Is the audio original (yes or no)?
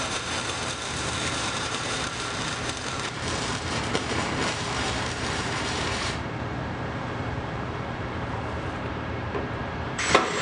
no